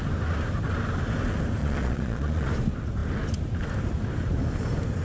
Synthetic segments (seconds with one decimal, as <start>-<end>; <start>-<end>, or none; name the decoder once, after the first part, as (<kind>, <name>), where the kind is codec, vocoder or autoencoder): 1.6-2.5 (vocoder, Vocos)